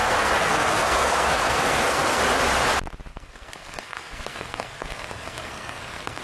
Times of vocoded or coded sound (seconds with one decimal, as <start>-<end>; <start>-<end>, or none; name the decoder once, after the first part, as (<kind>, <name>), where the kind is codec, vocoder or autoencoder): 0.0-2.2 (codec, SNAC); 3.1-6.2

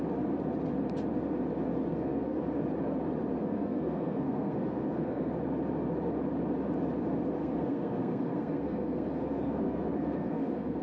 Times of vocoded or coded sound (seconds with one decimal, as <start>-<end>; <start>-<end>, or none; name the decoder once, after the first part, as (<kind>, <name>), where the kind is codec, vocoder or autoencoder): 1.9-2.4 (codec, SNAC); 3.3-5.3; 7.4-10.8

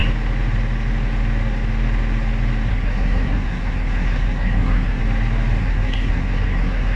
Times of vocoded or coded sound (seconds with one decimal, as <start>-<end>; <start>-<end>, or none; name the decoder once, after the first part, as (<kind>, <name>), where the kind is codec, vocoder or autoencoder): 2.7-5.0 (codec, SNAC); 5.6-7.0

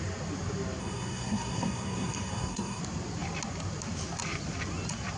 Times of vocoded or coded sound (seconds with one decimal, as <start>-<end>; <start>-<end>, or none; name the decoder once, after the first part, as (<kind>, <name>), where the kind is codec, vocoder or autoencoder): 0.8-2.8 (codec, SNAC)

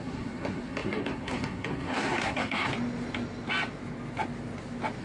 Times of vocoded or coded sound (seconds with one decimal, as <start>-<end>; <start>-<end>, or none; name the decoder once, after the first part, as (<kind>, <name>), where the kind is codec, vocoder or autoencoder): 0.0-2.7 (codec, SNAC)

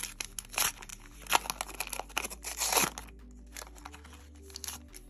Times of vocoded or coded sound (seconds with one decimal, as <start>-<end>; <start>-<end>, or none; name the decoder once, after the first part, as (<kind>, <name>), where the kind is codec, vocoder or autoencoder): none

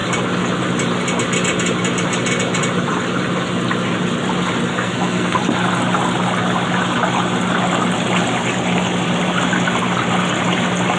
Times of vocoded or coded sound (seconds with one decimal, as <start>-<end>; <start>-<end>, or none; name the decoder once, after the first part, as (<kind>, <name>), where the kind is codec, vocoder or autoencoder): 4.7-5.4 (codec, SNAC)

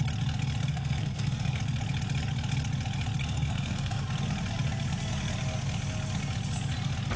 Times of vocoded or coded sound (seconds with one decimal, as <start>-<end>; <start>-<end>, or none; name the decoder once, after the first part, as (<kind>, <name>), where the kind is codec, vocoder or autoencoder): 0.7-1.6 (codec, SNAC); 3.2-4.0